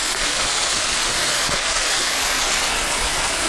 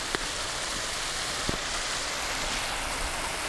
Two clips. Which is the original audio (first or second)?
second